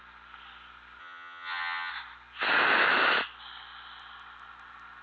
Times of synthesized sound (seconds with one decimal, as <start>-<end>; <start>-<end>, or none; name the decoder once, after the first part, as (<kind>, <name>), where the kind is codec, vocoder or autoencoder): 1.0-1.9 (vocoder, HiFi-GAN)